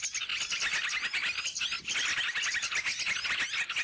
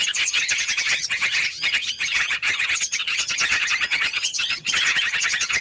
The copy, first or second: second